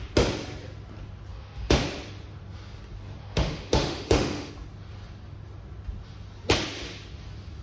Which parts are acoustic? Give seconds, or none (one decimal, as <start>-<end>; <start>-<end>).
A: 0.0-1.3; 1.8-3.2; 4.5-7.6